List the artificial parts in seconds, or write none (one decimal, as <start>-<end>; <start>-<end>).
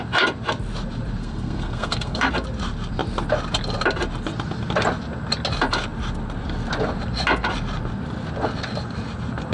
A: 1.2-2.3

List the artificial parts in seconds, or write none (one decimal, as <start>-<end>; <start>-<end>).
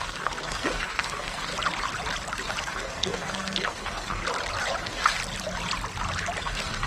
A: 0.0-1.5; 2.6-4.2; 4.8-5.2; 6.4-6.9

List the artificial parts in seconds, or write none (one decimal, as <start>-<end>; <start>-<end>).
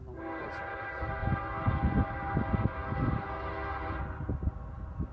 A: none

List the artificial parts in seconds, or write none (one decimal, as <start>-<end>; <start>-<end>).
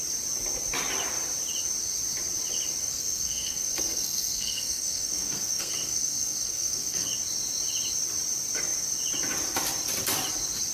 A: 2.8-7.1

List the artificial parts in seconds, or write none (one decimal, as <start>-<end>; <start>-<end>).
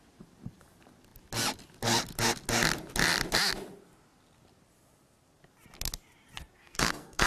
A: 6.6-7.3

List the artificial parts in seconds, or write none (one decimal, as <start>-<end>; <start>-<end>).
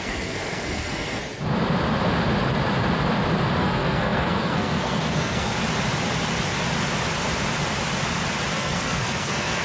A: 0.0-1.2; 3.6-5.5; 8.5-9.6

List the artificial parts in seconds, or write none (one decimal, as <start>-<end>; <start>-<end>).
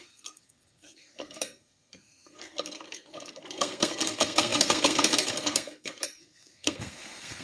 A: 0.0-7.4